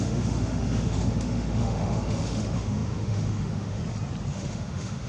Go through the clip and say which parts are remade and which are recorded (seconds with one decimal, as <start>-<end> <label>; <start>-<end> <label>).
0.0-3.8 remade; 3.8-4.3 recorded; 4.3-5.1 remade